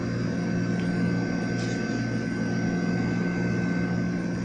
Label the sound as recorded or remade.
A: recorded